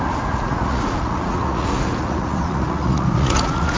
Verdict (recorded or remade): remade